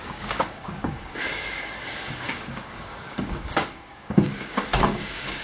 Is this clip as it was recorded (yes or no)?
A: no